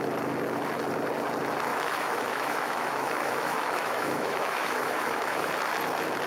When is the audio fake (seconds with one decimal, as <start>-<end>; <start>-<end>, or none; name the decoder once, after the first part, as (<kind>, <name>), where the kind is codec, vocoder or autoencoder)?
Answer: 1.7-5.5 (autoencoder, DAC-VAE)